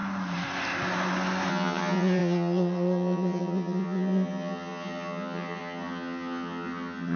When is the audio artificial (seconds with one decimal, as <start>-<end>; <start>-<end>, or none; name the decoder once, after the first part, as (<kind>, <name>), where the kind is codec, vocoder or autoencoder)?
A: 1.5-7.2 (vocoder, HiFi-GAN)